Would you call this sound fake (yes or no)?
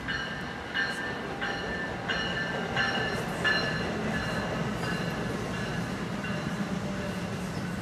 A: no